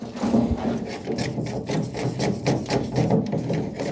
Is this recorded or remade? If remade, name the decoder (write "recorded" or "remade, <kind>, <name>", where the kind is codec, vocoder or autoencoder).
recorded